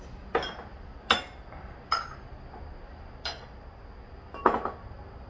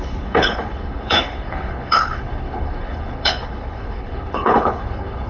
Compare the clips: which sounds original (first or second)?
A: first